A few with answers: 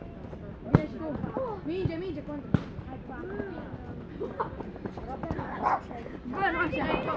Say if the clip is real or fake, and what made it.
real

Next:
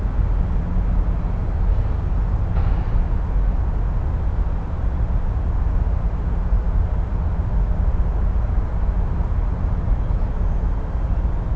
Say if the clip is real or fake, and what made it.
real